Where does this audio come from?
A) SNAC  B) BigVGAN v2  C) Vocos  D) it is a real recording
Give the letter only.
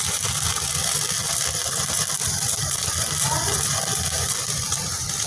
B